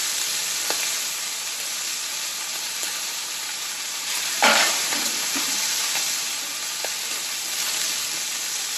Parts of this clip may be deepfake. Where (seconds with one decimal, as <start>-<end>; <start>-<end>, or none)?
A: 2.1-6.0